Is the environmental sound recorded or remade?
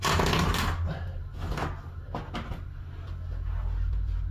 recorded